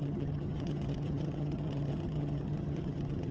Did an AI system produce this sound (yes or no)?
yes